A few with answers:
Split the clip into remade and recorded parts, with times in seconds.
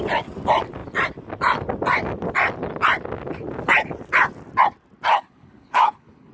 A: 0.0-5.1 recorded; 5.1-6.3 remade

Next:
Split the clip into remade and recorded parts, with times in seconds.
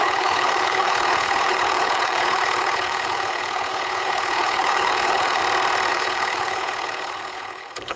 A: 0.0-5.4 remade; 5.4-5.9 recorded; 5.9-8.0 remade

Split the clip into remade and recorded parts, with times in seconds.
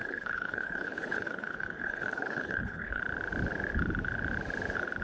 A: 0.0-3.0 remade; 3.0-5.0 recorded